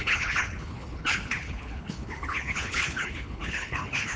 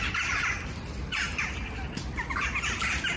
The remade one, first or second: first